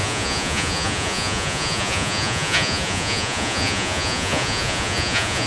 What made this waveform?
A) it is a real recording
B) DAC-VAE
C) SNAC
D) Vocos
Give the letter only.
D